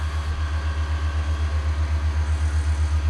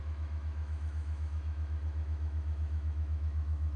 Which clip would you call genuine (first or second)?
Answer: first